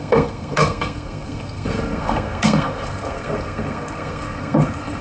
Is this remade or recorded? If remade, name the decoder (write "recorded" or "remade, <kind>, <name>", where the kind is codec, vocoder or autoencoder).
remade, codec, SNAC